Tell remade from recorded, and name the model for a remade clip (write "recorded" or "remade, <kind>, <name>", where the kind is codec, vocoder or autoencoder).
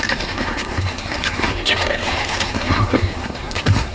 remade, codec, SNAC